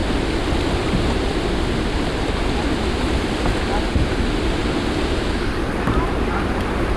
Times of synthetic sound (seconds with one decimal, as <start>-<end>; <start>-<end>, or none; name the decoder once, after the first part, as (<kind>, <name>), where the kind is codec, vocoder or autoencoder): none